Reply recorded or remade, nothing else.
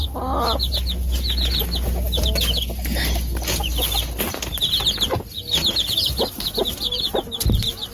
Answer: recorded